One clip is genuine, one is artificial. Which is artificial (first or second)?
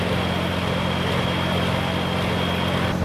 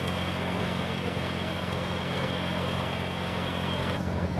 second